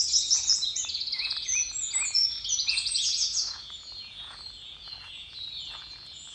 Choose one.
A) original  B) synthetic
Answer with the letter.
B